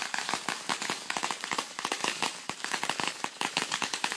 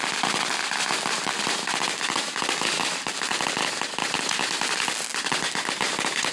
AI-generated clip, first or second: first